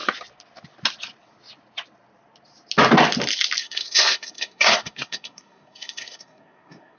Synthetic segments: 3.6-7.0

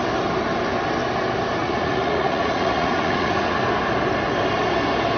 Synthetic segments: 1.6-3.6

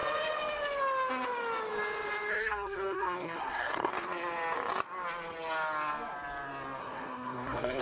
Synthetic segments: 2.3-3.9; 6.8-7.8

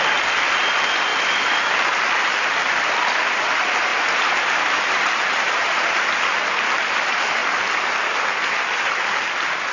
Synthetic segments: 1.1-1.7; 3.9-5.9

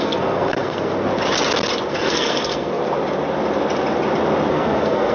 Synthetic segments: 0.0-1.1; 1.9-2.8; 4.5-5.1

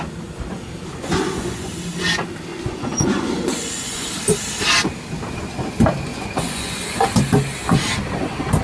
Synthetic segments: 0.9-1.7; 2.5-4.1; 6.1-7.1

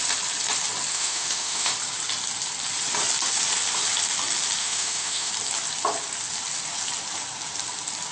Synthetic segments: 0.9-1.7; 4.6-5.3